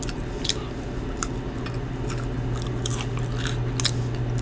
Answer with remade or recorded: recorded